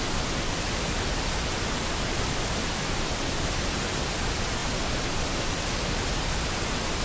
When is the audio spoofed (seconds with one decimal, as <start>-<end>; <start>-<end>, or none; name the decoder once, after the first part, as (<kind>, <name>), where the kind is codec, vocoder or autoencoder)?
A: none